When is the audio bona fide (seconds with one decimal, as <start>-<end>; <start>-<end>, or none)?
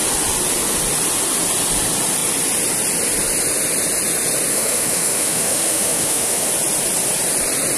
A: 0.0-4.5; 6.5-7.8